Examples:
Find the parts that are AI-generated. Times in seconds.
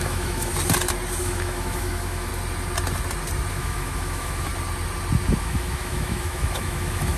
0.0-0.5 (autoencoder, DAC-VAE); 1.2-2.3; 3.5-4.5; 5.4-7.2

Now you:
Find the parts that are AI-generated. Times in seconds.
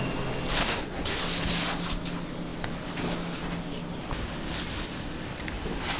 0.6-1.2 (codec, SNAC)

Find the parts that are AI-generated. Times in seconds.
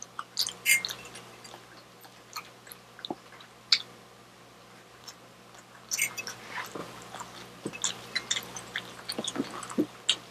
none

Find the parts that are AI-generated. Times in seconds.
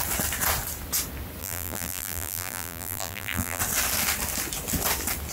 1.4-3.6 (vocoder, BigVGAN v2)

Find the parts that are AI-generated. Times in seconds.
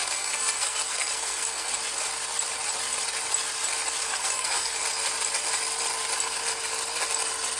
0.0-1.7 (codec, SNAC); 4.0-4.8